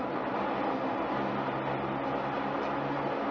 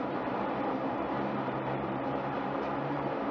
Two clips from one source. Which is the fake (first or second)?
second